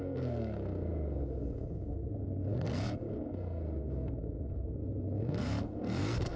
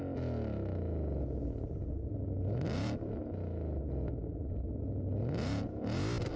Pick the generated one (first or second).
first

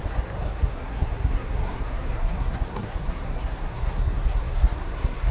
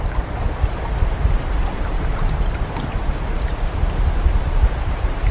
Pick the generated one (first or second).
first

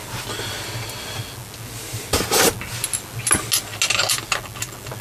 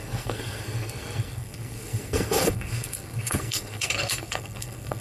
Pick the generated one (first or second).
second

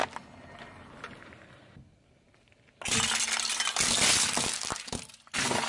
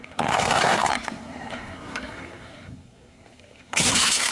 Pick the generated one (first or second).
second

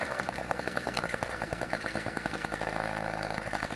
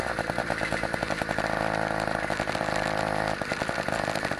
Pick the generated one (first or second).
first